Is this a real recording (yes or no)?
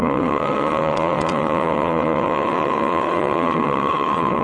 no